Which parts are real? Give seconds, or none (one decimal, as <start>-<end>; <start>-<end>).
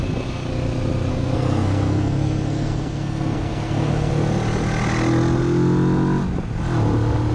0.0-1.1; 4.1-7.3